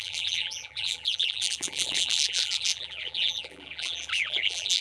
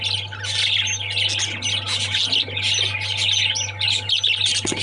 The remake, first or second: first